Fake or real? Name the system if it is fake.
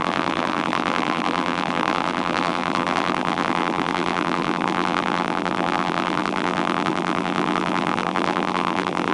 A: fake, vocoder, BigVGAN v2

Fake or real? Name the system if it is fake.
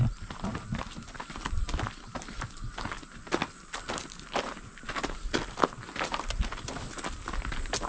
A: real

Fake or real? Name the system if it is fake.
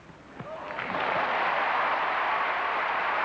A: real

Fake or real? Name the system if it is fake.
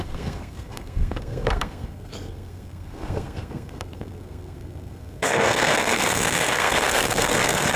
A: fake, codec, SNAC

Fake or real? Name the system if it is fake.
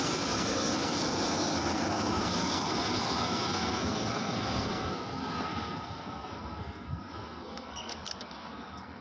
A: fake, codec, SNAC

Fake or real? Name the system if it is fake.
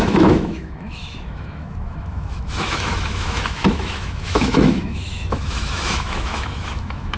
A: fake, autoencoder, DAC-VAE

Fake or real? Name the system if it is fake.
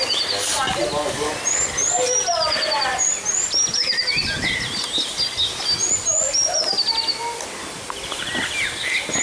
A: real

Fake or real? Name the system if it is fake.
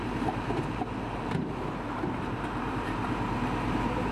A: fake, vocoder, BigVGAN v2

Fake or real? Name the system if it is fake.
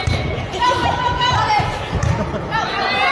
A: real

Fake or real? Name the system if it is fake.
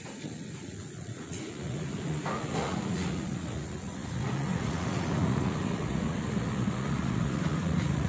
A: fake, vocoder, Vocos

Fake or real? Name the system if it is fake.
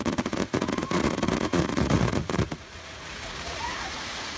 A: fake, vocoder, Vocos